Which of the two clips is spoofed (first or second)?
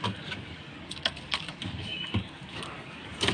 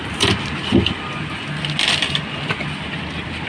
first